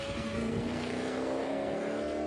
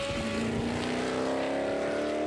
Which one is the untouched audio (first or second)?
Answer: second